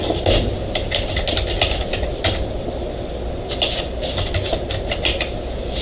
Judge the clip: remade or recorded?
recorded